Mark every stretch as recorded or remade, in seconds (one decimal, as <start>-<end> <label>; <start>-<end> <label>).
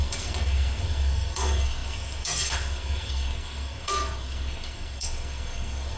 0.0-6.0 remade